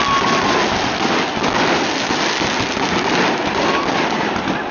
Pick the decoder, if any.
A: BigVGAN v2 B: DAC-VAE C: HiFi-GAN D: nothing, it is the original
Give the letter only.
D